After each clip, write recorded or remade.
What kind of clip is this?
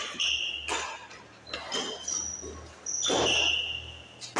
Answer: recorded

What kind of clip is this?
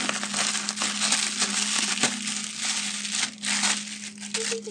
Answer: recorded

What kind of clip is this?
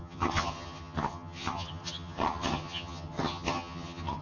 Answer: remade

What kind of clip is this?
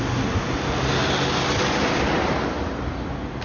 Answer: recorded